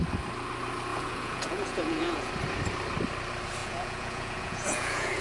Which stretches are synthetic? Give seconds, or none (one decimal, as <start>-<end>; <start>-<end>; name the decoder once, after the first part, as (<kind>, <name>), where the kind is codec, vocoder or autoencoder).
0.9-2.3 (vocoder, Vocos); 3.6-5.2